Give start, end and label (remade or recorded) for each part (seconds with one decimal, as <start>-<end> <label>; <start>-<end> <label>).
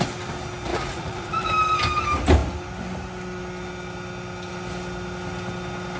0.0-0.7 recorded; 0.7-1.5 remade; 1.5-6.0 recorded